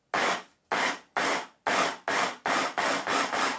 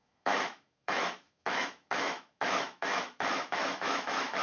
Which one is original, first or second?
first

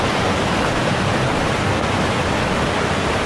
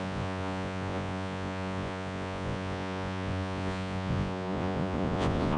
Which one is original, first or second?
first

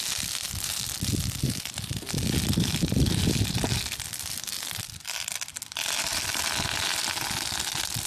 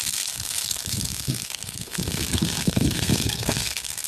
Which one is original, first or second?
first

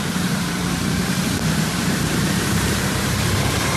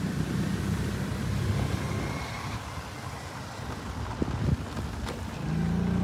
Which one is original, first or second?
second